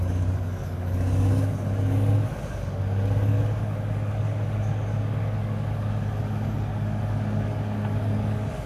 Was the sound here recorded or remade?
remade